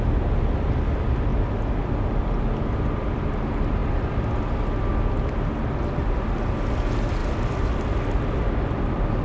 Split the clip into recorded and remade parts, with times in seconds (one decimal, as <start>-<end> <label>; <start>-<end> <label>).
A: 0.0-9.2 recorded